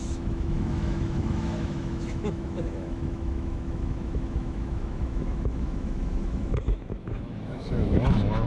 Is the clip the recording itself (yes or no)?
no